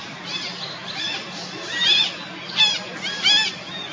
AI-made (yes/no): no